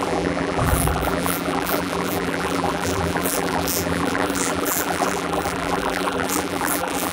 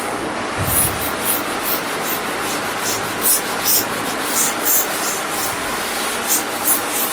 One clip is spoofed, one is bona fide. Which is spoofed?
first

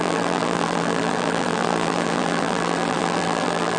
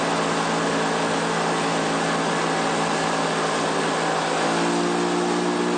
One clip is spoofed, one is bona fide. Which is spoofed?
first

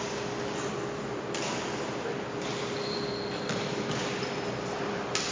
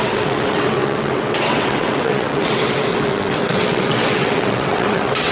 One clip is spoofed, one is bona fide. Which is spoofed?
second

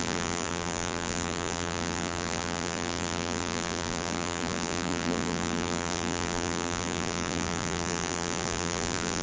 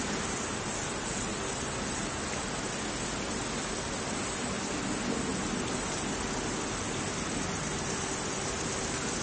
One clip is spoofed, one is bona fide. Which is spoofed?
first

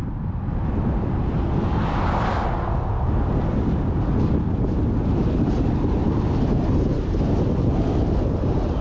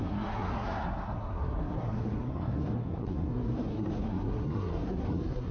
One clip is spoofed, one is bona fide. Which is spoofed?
second